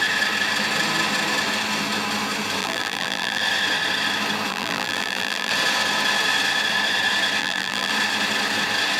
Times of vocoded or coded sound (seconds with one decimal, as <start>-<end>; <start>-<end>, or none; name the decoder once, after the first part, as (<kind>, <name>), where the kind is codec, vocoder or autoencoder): 2.6-3.4 (vocoder, BigVGAN v2); 4.5-5.5; 7.4-7.9